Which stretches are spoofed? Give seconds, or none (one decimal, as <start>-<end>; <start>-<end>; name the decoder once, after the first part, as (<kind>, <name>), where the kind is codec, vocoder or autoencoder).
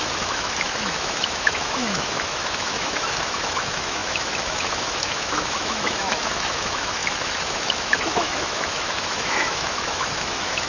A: 0.0-10.7 (autoencoder, DAC-VAE)